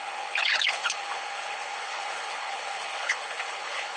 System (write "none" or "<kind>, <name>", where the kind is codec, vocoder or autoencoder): codec, HILCodec